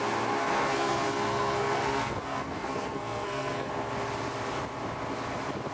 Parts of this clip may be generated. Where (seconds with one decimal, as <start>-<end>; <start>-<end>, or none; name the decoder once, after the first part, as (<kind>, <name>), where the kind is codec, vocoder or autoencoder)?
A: 0.4-3.7 (codec, SNAC)